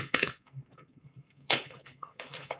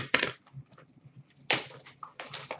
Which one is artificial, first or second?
first